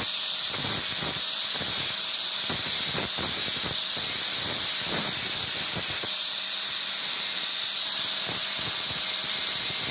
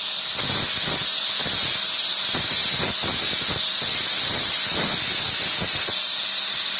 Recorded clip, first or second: second